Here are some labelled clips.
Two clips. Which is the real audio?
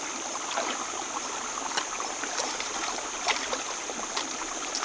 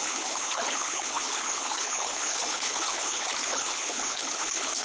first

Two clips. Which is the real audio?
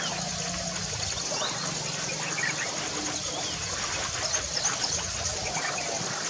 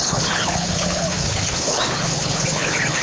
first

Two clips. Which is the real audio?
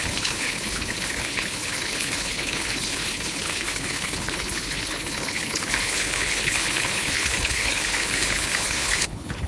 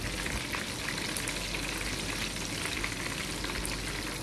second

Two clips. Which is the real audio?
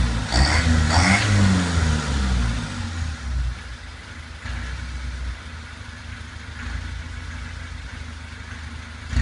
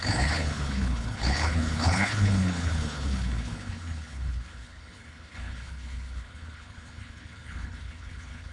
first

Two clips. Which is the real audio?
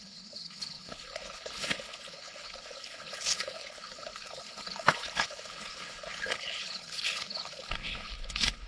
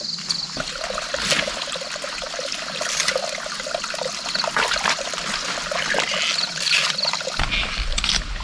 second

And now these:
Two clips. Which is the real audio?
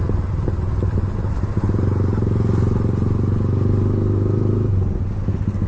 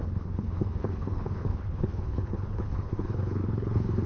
first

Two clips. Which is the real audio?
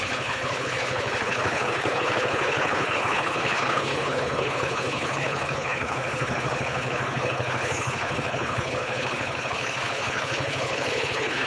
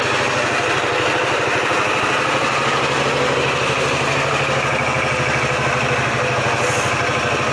second